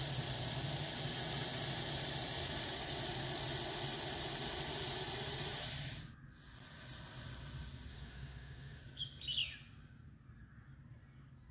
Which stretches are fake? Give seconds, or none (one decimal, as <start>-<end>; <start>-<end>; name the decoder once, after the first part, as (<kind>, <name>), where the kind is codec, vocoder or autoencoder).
7.9-8.8 (autoencoder, DAC-VAE)